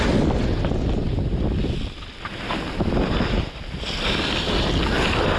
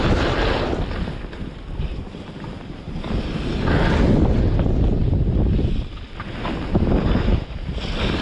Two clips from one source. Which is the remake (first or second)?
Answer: second